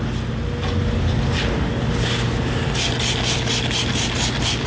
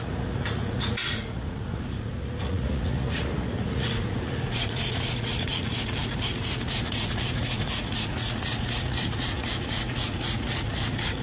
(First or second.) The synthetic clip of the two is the second